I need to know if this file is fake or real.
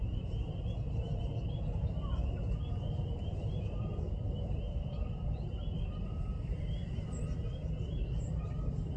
real